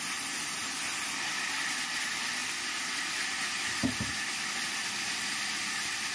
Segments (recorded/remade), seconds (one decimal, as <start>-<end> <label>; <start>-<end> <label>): 0.0-6.1 recorded